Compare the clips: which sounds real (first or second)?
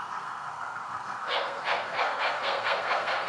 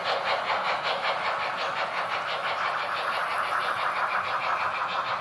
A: second